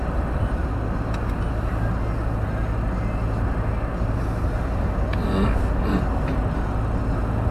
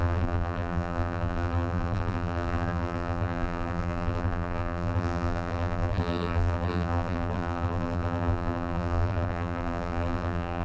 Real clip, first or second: first